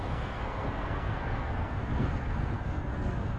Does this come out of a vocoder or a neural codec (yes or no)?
yes